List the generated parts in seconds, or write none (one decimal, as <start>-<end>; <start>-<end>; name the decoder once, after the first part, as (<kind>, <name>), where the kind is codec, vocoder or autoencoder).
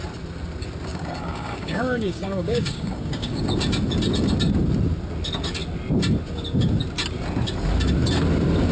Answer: 0.9-3.4 (codec, DAC)